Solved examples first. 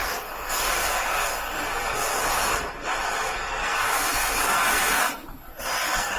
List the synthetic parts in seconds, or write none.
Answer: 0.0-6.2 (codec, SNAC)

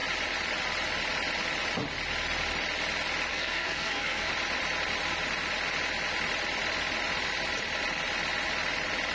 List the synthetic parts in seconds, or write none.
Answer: 3.3-4.3 (codec, SNAC)

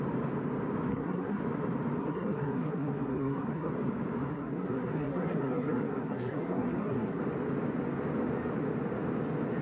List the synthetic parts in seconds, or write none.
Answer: 0.9-1.4 (codec, SNAC); 2.0-3.7; 4.3-7.2